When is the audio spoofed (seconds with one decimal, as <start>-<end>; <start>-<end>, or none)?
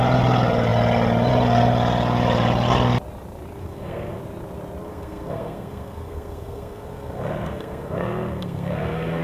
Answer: 3.6-4.2; 4.9-9.2